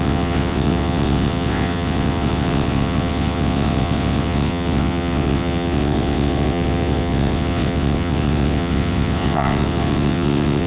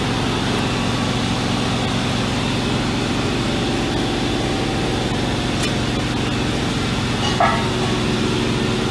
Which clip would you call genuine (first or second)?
second